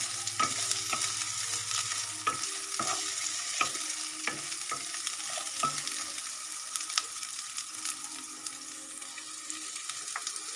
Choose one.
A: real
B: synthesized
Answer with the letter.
A